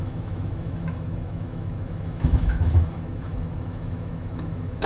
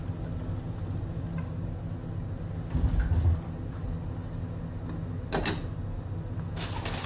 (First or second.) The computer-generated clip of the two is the first